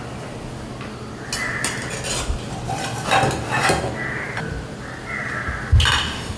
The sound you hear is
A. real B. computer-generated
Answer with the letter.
A